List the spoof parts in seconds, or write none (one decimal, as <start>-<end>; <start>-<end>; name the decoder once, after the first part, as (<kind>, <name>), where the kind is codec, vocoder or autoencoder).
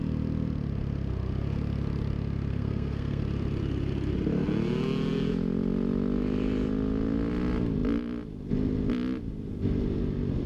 2.5-3.2 (codec, SNAC)